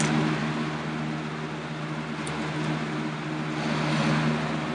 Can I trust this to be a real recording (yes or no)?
yes